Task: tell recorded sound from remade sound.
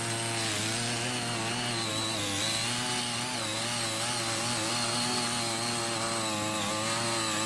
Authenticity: recorded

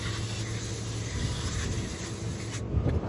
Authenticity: recorded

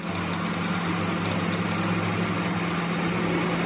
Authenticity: recorded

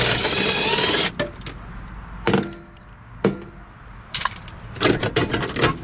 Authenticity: recorded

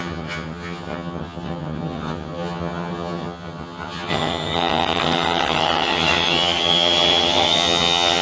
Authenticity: remade